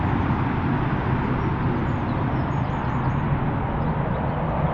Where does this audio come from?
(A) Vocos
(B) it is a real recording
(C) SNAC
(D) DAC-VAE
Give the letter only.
B